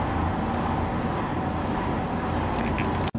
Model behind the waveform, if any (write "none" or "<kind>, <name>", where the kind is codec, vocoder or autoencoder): none